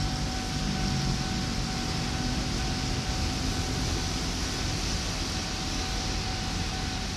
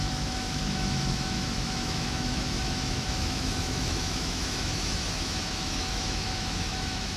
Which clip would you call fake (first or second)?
second